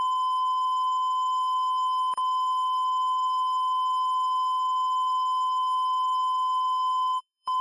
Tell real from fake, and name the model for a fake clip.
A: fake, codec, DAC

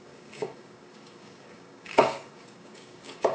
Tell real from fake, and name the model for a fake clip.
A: fake, codec, DAC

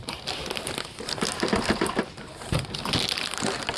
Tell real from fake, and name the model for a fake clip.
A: real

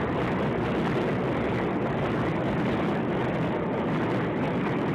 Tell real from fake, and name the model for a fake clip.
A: real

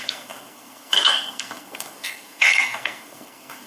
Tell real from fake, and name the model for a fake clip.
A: fake, codec, SNAC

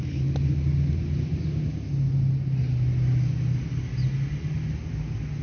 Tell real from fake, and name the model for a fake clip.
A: real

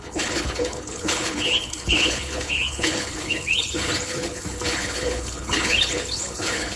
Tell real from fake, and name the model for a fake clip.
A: fake, codec, HILCodec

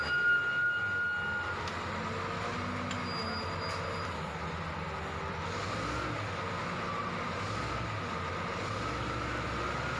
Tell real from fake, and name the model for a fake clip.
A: real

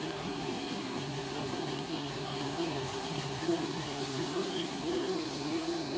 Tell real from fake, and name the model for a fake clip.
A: fake, codec, SNAC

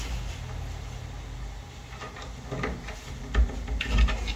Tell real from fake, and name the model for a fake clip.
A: real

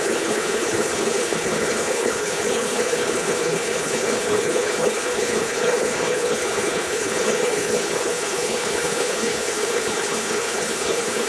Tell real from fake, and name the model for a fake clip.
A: fake, codec, HILCodec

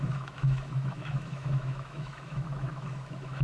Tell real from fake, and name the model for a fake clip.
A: fake, autoencoder, DAC-VAE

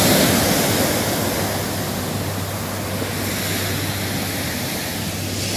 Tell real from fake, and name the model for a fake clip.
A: real